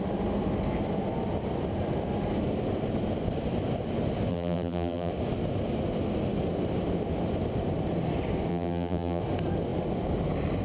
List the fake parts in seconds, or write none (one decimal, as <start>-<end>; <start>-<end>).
4.3-5.1; 8.5-9.2